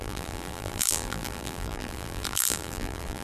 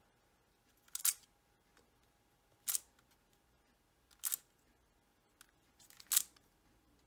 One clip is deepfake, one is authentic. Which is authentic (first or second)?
second